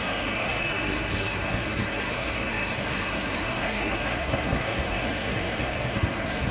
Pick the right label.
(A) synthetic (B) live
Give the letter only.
A